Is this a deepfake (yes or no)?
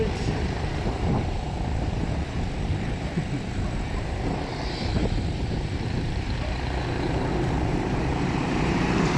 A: yes